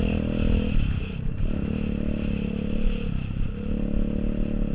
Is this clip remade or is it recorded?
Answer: recorded